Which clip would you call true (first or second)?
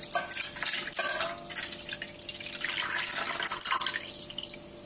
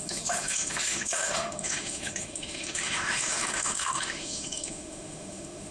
first